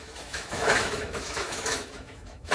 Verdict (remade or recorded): remade